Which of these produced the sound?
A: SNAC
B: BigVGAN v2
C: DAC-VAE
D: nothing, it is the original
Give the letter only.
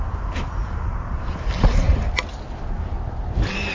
D